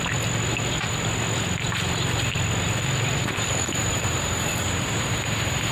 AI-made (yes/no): yes